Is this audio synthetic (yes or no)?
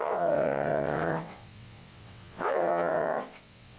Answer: yes